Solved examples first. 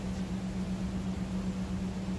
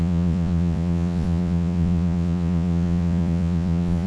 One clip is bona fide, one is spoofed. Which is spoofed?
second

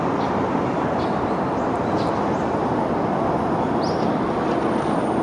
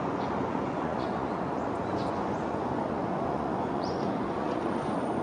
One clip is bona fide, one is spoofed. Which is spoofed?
second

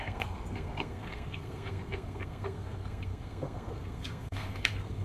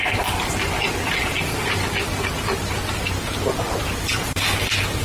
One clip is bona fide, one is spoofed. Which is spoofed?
first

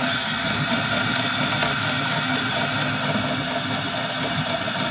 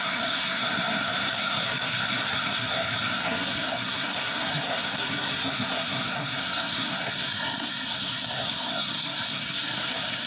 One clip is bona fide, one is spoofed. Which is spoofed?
second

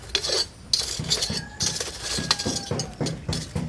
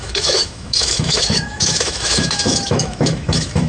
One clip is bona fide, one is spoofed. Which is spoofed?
second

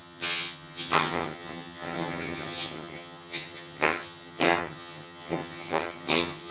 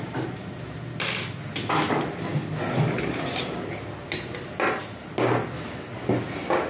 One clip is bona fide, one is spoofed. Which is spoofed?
first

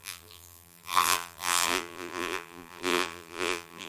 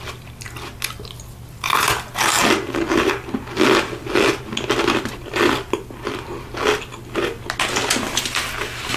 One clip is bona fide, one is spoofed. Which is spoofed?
first